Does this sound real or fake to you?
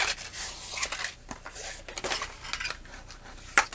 real